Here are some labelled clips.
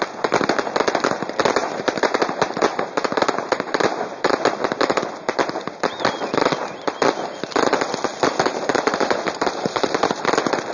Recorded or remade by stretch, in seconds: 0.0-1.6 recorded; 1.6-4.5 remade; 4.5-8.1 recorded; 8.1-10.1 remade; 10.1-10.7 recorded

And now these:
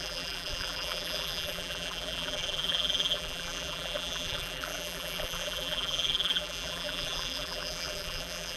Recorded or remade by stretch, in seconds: 0.0-8.6 remade

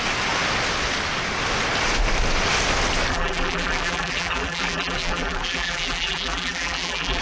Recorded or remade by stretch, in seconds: 0.0-3.1 recorded; 3.1-7.2 remade

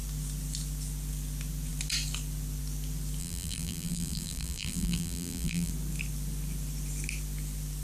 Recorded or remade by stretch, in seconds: 0.0-3.2 recorded; 3.2-5.7 remade; 5.7-7.8 recorded